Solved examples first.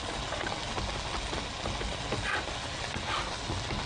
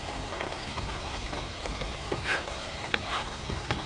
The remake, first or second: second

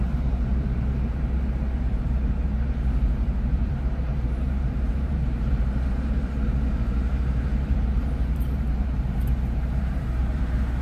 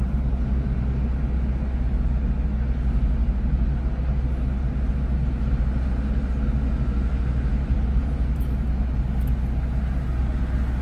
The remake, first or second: first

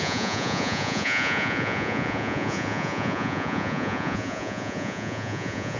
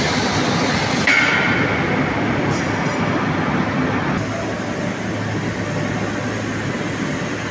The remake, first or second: first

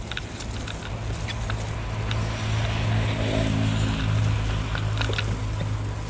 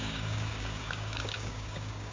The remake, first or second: second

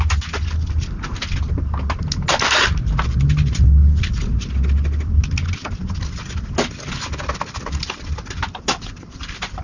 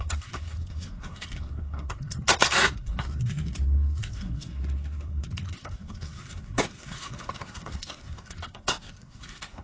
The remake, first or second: second